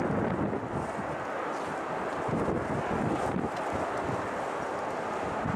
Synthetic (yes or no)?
no